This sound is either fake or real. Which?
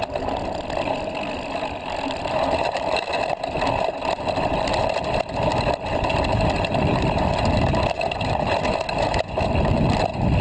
real